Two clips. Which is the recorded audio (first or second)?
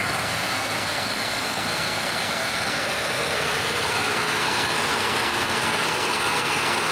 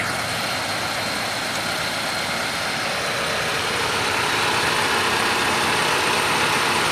second